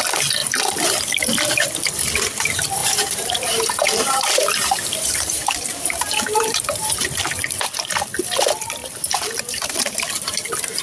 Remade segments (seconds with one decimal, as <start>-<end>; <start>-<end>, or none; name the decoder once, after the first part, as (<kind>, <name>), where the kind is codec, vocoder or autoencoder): 2.8-7.0 (vocoder, BigVGAN v2); 8.8-10.8